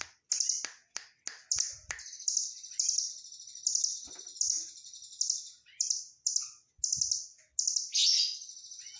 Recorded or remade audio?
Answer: recorded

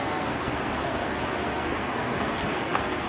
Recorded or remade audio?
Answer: remade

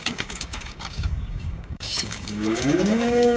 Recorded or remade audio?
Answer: remade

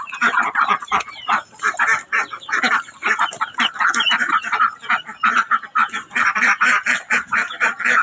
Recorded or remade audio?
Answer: recorded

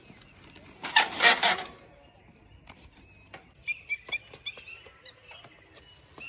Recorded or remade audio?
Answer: recorded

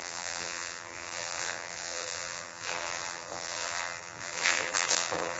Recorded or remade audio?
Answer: remade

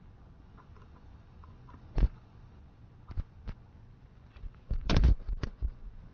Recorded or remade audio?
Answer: remade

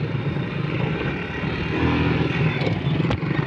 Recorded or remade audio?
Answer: recorded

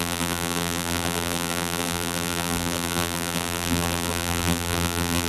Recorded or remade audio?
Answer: remade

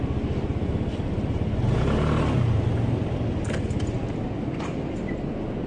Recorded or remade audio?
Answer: recorded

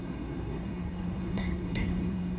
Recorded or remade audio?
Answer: remade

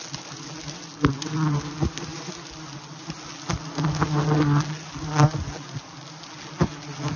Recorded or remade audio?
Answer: recorded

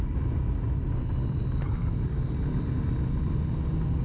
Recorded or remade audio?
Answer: recorded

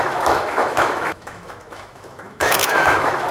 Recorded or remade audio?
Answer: remade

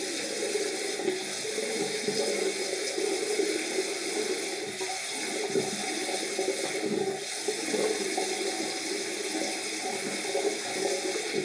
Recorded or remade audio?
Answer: recorded